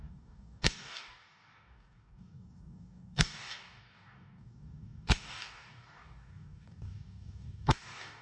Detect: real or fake fake